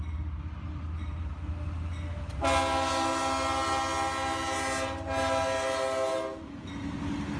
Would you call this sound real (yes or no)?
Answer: yes